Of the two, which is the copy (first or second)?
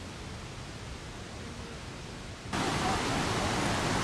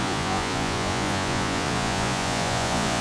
second